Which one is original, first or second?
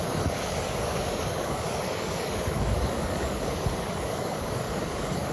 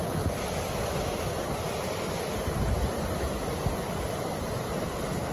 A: second